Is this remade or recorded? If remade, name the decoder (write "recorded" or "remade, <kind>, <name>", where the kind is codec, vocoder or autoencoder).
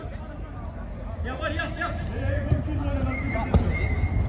recorded